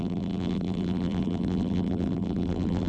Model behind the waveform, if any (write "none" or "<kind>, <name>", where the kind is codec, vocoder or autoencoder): vocoder, BigVGAN v2